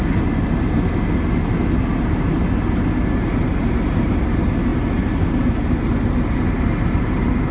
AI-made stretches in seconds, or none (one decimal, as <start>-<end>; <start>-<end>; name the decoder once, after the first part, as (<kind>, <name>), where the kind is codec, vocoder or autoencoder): none